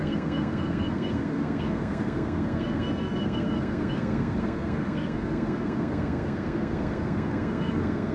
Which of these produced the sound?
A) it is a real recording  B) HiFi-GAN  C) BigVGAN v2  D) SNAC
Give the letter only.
D